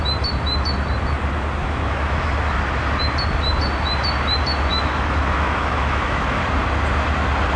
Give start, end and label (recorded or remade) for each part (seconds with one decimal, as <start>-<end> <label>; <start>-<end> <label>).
0.0-1.6 recorded; 1.6-2.3 remade; 2.3-4.7 recorded; 4.7-6.4 remade; 6.4-7.6 recorded